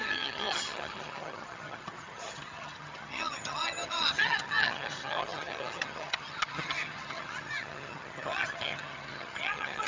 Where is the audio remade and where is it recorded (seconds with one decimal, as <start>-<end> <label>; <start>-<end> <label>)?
0.0-9.9 remade